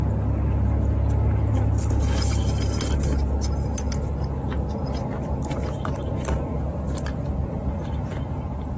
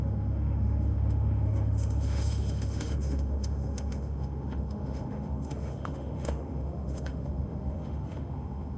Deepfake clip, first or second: second